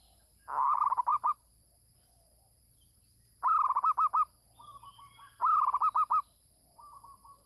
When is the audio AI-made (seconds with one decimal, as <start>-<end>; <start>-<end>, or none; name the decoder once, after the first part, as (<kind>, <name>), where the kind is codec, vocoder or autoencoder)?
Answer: none